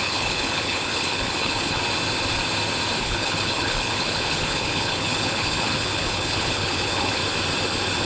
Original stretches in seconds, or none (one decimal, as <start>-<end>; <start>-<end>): 1.8-3.0; 7.2-8.0